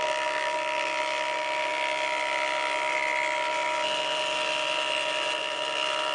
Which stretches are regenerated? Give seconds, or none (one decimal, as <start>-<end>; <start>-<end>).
none